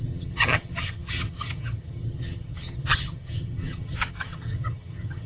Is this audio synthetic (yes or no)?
yes